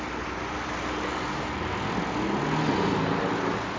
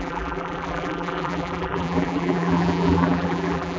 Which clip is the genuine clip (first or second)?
first